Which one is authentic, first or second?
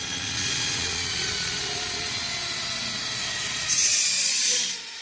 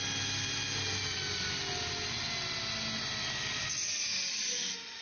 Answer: second